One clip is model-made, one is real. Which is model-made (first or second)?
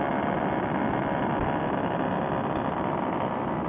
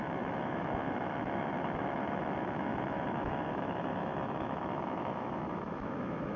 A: second